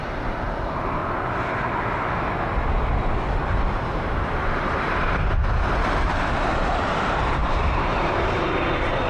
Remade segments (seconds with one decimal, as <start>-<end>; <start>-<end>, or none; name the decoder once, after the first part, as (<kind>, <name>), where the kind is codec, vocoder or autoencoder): 0.0-1.0 (vocoder, BigVGAN v2); 3.7-5.4; 6.3-9.1

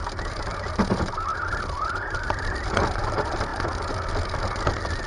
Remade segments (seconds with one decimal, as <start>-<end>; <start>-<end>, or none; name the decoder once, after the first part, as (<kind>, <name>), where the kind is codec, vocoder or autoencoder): 0.0-0.7 (vocoder, BigVGAN v2); 1.3-3.0

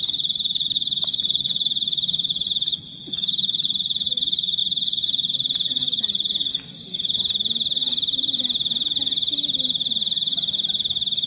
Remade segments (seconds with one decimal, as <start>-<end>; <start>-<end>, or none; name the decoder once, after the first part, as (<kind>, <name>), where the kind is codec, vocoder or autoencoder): none